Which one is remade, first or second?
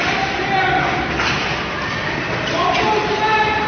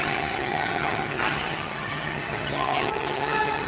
second